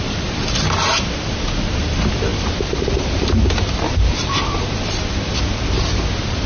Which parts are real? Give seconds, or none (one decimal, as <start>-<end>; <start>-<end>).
0.0-6.5